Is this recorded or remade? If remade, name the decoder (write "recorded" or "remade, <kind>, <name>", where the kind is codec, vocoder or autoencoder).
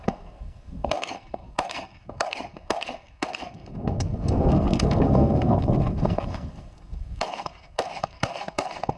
remade, codec, SNAC